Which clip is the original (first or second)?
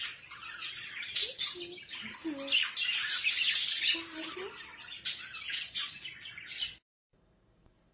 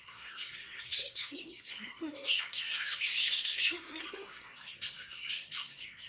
first